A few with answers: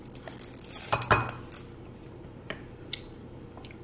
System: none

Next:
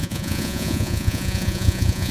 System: vocoder, Vocos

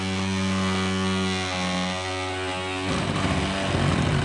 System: none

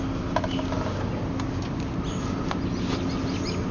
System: none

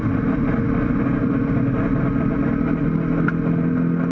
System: none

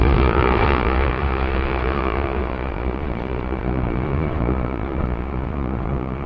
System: vocoder, Vocos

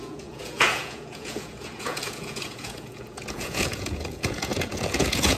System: vocoder, Vocos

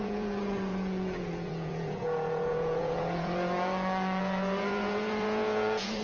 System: vocoder, Vocos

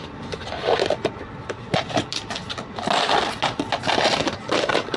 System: none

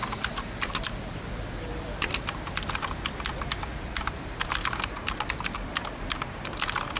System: none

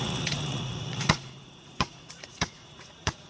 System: vocoder, Vocos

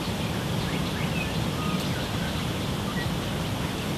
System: none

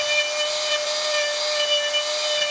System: none